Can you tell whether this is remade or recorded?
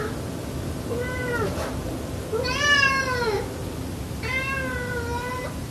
recorded